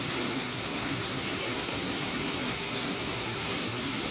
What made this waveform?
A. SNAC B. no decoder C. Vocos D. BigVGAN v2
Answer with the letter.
A